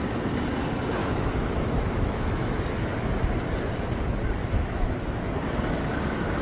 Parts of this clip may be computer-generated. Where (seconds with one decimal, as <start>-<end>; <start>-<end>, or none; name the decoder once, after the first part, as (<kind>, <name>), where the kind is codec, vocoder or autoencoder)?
1.0-2.6 (autoencoder, DAC-VAE); 4.4-6.0